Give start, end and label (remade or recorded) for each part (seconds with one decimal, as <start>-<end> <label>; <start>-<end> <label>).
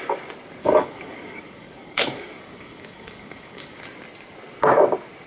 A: 0.0-0.6 recorded; 0.6-3.8 remade; 3.8-5.3 recorded